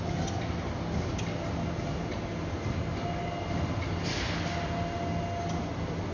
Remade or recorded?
recorded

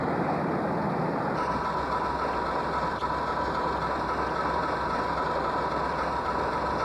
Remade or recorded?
recorded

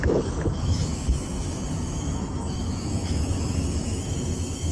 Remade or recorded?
remade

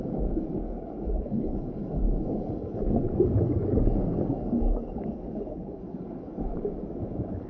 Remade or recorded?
remade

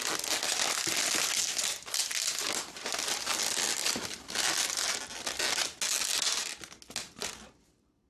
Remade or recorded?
recorded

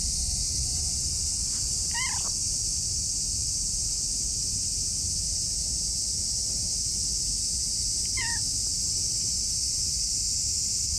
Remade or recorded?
remade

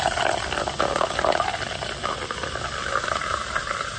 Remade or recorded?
recorded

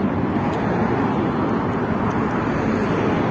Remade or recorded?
recorded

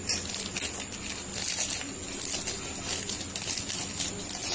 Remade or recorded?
recorded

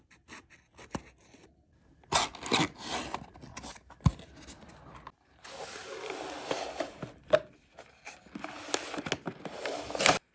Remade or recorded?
recorded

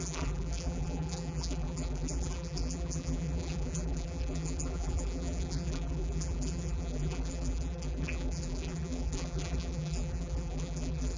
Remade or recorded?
remade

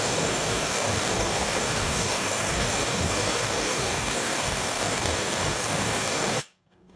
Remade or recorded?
remade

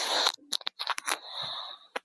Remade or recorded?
recorded